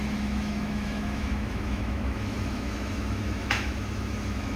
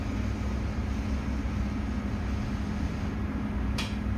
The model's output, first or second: first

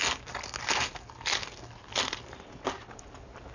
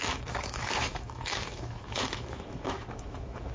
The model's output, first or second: second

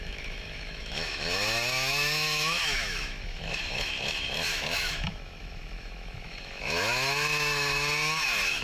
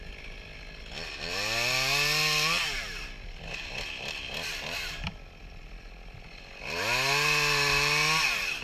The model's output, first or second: first